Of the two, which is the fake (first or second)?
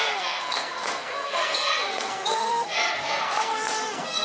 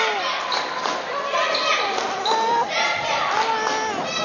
first